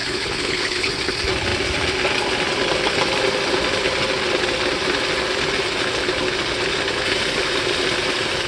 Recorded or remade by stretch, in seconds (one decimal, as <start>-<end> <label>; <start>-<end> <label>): 0.0-0.9 remade; 0.9-8.5 recorded

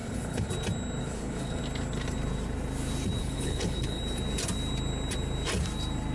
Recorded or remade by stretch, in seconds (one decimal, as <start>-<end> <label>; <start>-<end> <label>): 0.0-0.5 remade; 0.5-1.0 recorded; 1.0-1.6 remade; 1.6-3.2 recorded; 3.2-4.0 remade; 4.0-6.1 recorded

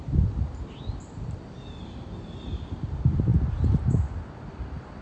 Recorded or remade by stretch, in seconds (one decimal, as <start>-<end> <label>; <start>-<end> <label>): 0.0-5.0 recorded